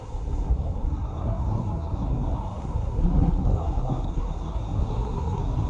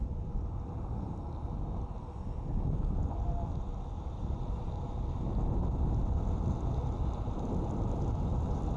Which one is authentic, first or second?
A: second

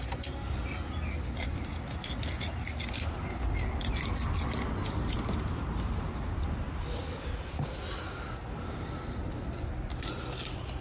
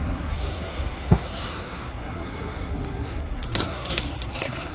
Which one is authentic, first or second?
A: first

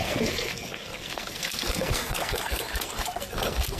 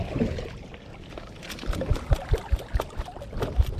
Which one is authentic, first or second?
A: second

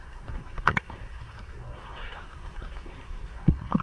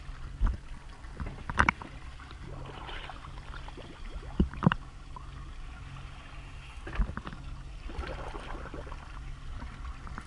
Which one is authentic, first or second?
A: second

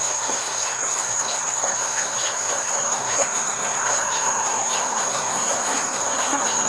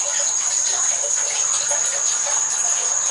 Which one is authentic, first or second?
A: second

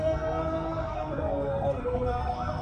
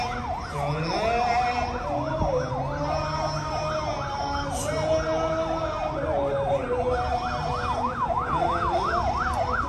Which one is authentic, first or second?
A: second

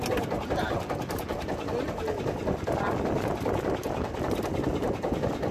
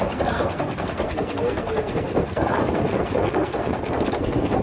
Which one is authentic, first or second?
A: first